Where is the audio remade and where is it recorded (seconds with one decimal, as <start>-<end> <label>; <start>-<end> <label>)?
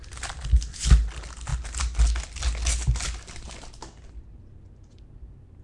0.0-5.6 recorded